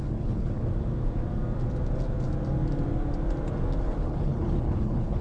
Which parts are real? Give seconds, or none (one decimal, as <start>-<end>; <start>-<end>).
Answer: 0.7-3.8